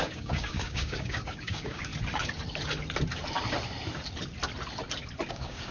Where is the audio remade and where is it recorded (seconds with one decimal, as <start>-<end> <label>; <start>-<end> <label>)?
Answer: 0.0-1.9 remade; 1.9-5.3 recorded; 5.3-5.7 remade